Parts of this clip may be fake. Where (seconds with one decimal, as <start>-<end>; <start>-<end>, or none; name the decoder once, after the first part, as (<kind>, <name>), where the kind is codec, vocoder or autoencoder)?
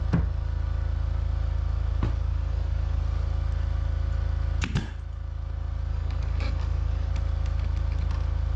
2.3-3.0 (codec, DAC); 5.9-7.1